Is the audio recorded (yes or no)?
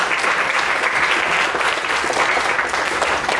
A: no